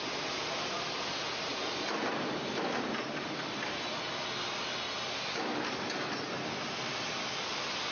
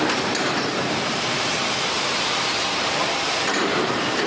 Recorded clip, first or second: first